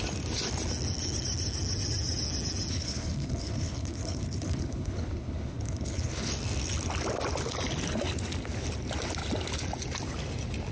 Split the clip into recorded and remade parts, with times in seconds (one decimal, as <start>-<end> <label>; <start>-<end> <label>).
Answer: 0.0-2.7 recorded; 2.7-6.3 remade; 6.3-10.7 recorded